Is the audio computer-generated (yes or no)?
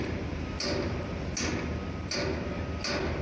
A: no